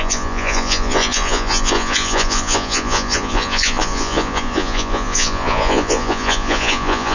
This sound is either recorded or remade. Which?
remade